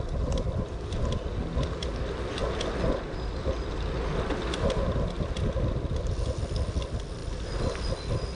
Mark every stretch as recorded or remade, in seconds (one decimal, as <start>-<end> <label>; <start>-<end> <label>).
0.0-8.3 recorded